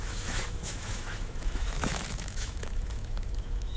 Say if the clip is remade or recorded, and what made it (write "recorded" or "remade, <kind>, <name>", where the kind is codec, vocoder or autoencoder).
remade, autoencoder, DAC-VAE